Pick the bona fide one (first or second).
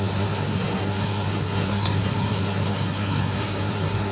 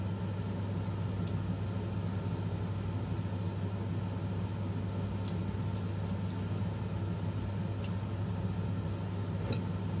second